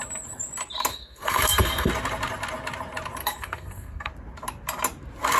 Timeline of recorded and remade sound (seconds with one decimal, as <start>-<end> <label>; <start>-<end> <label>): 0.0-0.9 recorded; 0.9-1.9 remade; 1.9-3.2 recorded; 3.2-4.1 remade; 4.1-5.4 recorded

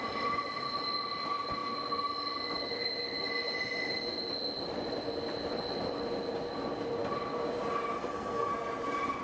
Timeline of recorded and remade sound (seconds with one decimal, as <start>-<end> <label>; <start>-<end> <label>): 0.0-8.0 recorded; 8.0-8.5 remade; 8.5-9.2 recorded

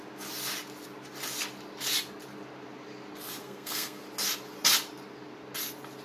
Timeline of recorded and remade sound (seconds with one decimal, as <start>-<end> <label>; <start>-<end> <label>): 0.0-3.4 recorded; 3.4-4.0 remade; 4.0-6.0 recorded

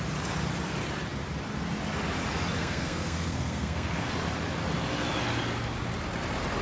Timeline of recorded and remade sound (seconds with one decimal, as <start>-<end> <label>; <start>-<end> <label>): 0.0-2.6 recorded; 2.6-4.1 remade; 4.1-6.6 recorded

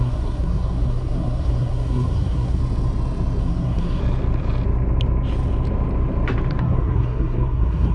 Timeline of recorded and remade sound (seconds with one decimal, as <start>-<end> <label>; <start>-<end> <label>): 0.0-2.6 remade; 2.6-3.4 recorded; 3.4-4.0 remade; 4.0-6.6 recorded; 6.6-7.9 remade

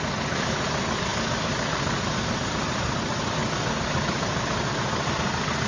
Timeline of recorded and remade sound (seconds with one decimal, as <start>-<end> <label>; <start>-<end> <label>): 0.0-5.7 recorded